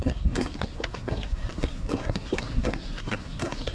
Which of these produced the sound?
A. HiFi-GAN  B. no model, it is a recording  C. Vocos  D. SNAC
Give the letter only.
D